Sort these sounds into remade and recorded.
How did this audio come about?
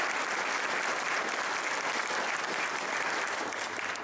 recorded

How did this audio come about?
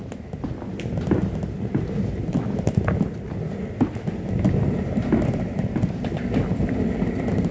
recorded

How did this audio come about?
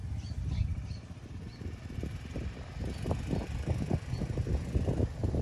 recorded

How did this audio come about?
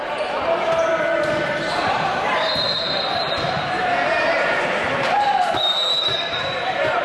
remade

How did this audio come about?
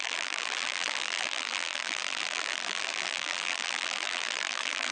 remade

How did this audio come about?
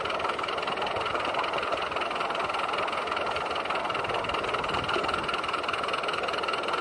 recorded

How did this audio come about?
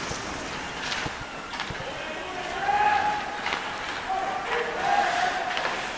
recorded